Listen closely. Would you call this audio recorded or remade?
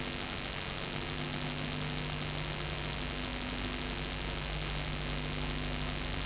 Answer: recorded